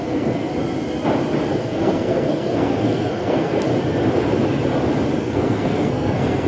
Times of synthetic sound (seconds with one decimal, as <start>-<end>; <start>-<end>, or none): 0.0-0.5; 1.5-3.7; 5.2-6.5